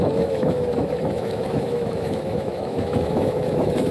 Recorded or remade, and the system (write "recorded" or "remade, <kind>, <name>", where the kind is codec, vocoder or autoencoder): remade, autoencoder, DAC-VAE